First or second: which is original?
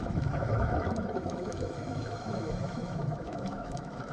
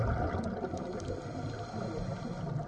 second